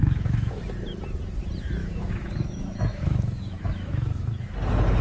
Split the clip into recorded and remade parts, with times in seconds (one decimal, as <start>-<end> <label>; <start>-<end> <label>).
0.0-0.6 remade; 0.6-1.8 recorded; 1.8-4.5 remade; 4.5-5.0 recorded